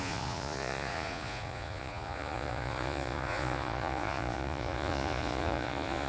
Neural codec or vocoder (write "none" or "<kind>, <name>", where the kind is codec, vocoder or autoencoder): vocoder, Vocos